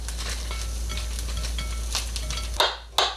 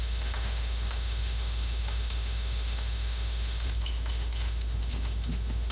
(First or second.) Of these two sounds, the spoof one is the second